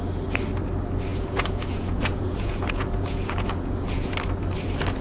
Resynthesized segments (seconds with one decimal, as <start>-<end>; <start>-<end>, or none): 1.1-4.1